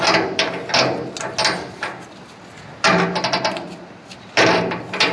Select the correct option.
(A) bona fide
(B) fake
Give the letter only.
A